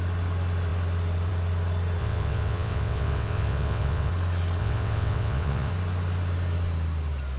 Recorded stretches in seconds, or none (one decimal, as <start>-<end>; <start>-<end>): 0.0-2.0; 4.1-4.6; 5.7-7.4